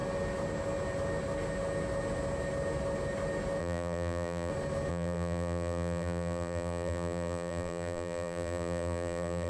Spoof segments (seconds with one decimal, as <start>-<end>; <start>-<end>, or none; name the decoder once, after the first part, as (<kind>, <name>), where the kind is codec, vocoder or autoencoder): 3.6-4.5 (vocoder, BigVGAN v2); 4.9-9.5